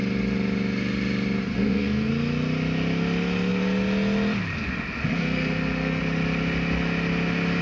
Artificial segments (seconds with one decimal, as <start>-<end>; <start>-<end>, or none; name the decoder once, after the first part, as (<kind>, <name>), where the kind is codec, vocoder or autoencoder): 1.5-2.1 (codec, SNAC); 5.0-6.0